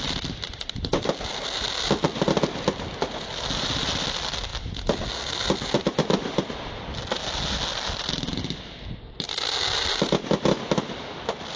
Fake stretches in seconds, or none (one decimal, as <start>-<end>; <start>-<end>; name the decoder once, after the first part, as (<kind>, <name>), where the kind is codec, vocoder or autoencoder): none